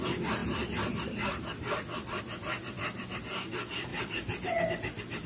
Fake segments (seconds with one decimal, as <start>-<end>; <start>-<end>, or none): 0.4-2.2; 3.9-4.6